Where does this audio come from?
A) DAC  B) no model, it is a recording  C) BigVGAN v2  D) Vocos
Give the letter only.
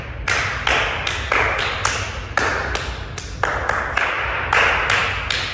B